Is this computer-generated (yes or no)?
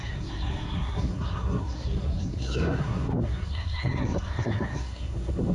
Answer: yes